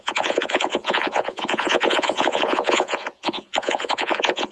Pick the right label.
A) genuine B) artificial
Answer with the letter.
B